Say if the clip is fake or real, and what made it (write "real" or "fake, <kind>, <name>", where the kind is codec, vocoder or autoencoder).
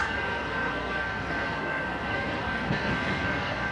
fake, codec, SNAC